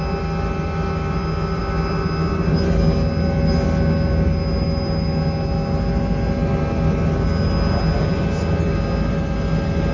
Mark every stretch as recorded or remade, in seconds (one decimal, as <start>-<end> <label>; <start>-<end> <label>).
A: 0.0-9.9 recorded